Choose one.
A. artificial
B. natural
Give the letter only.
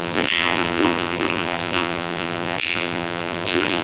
A